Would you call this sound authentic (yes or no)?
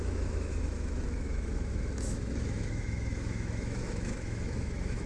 no